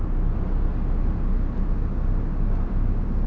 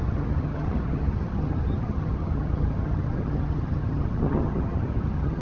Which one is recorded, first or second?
first